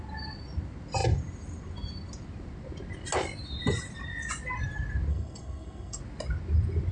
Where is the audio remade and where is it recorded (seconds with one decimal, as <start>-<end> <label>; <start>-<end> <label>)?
0.0-5.1 recorded; 5.1-6.0 remade; 6.0-6.9 recorded